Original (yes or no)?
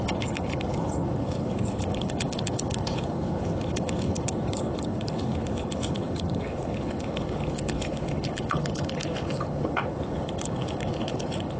no